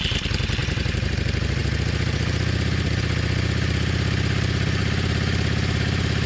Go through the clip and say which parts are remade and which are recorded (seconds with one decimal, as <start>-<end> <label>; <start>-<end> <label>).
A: 0.0-0.6 recorded; 0.6-1.1 remade; 1.1-6.3 recorded